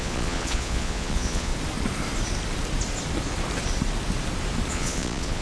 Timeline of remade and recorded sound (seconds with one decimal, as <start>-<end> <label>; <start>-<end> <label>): 0.0-1.5 remade; 1.5-4.7 recorded; 4.7-5.4 remade